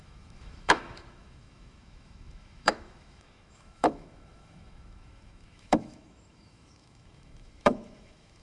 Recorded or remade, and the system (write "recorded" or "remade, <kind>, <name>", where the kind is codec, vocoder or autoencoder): remade, autoencoder, DAC-VAE